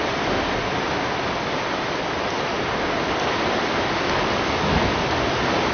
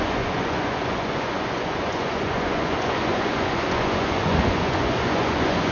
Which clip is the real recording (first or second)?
first